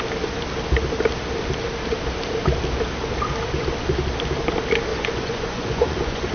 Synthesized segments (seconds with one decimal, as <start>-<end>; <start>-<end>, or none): 4.9-6.3